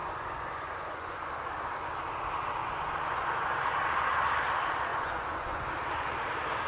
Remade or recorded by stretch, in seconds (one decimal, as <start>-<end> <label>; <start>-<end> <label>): 0.0-1.3 remade; 1.3-2.6 recorded; 2.6-4.1 remade; 4.1-4.9 recorded; 4.9-5.7 remade; 5.7-6.7 recorded